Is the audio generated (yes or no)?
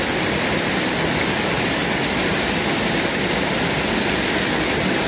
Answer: no